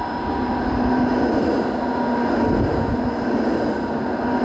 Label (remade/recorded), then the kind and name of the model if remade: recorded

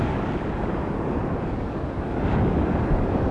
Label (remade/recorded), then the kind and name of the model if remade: remade, codec, DAC